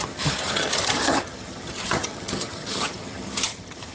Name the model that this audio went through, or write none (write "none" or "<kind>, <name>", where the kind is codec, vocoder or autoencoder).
vocoder, HiFi-GAN